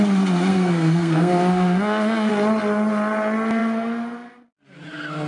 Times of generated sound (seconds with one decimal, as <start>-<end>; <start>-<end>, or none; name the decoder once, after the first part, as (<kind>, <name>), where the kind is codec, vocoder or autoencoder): 0.5-2.3 (codec, SNAC)